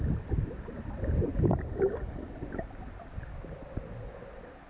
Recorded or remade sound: recorded